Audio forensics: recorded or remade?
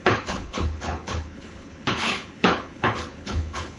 remade